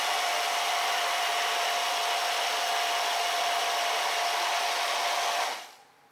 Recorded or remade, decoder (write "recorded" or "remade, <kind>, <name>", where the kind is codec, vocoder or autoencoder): recorded